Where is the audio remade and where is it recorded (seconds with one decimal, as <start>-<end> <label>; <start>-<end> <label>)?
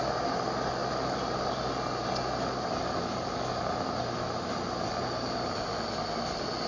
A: 0.0-6.7 recorded